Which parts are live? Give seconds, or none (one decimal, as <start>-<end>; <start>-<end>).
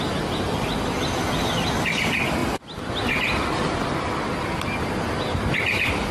0.0-6.1